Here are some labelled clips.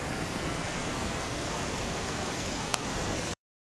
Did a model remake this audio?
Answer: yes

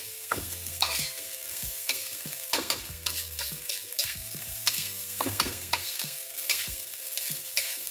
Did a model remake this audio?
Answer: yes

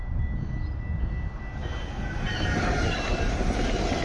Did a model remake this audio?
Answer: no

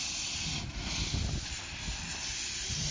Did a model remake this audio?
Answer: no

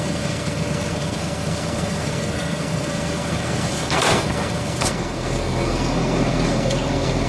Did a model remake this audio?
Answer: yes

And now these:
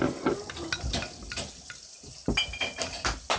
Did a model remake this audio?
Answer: no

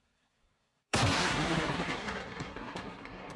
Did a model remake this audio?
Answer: yes